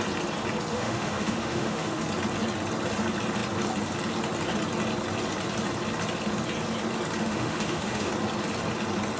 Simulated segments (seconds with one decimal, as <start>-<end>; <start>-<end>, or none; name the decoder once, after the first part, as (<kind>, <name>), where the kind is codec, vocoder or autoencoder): 0.7-2.0 (autoencoder, DAC-VAE); 7.2-8.1